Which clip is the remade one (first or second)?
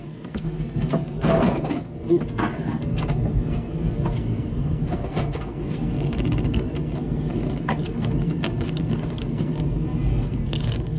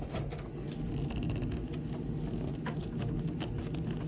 first